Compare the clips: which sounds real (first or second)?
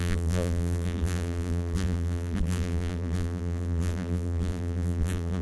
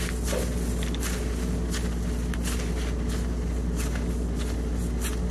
second